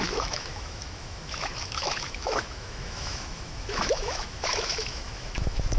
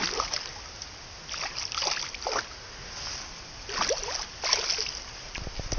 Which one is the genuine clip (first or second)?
second